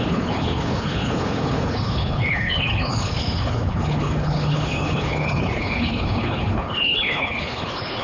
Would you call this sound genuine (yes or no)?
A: no